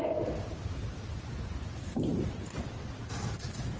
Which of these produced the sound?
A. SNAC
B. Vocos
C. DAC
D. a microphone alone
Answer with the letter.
D